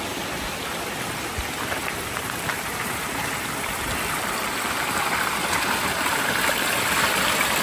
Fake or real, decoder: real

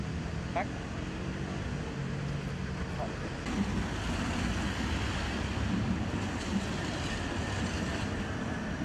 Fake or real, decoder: real